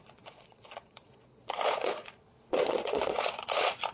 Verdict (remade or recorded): remade